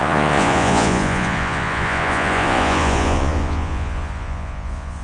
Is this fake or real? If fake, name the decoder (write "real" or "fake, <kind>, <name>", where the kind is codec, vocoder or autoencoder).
fake, vocoder, Vocos